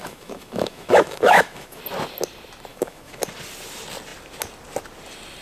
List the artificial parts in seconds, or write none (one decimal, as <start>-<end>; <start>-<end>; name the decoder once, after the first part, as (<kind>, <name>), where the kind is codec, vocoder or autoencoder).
0.0-1.8 (autoencoder, DAC-VAE); 2.7-3.2

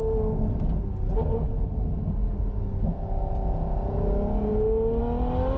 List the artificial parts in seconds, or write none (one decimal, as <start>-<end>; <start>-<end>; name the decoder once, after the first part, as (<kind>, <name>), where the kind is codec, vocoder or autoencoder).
none

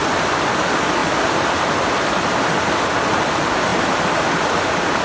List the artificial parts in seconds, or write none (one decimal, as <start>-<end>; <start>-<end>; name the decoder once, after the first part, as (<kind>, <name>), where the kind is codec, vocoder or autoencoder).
none

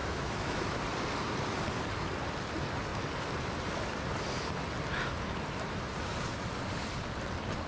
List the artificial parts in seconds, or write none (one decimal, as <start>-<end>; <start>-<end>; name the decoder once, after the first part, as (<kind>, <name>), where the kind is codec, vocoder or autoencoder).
0.0-0.8 (autoencoder, DAC-VAE)

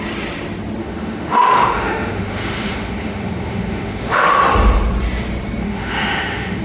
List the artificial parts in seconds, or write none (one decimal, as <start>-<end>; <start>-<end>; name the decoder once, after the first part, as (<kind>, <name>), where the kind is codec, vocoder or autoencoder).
0.8-4.4 (autoencoder, DAC-VAE); 5.6-6.6

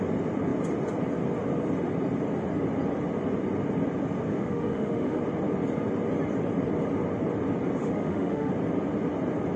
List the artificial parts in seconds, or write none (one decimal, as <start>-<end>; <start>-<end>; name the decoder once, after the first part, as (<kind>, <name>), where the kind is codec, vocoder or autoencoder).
4.3-5.2 (autoencoder, DAC-VAE); 7.8-8.5

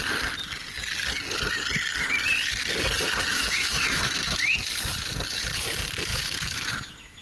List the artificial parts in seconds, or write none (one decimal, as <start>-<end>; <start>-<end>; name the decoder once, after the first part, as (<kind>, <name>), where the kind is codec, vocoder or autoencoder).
3.3-4.4 (autoencoder, DAC-VAE); 6.1-7.2